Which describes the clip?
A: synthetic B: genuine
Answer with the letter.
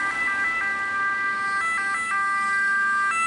B